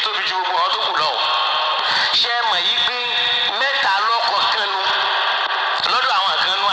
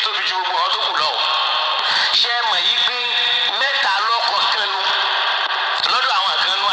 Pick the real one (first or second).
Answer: first